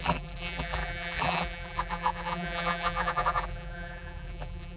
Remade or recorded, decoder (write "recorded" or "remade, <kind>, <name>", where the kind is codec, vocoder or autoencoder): remade, vocoder, BigVGAN v2